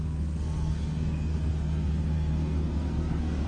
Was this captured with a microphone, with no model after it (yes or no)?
no